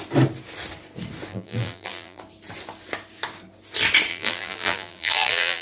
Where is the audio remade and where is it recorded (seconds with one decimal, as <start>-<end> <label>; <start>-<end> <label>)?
0.0-1.3 recorded; 1.3-2.2 remade; 2.2-4.1 recorded; 4.1-5.6 remade